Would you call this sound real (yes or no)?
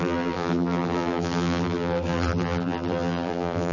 no